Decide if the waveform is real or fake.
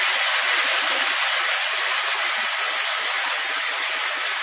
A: real